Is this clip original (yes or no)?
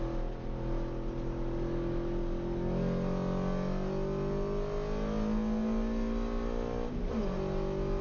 yes